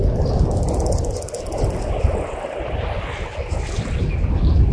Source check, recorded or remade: recorded